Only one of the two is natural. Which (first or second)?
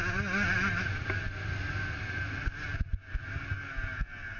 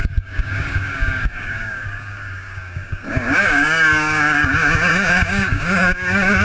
first